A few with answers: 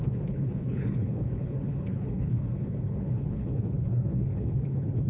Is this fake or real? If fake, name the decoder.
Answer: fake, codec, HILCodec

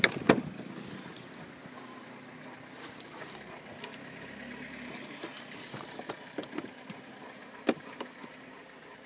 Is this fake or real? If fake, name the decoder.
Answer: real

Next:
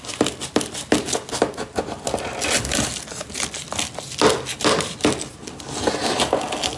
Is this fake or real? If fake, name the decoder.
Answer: real